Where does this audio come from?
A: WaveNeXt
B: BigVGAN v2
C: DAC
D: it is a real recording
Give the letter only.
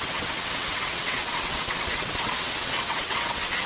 A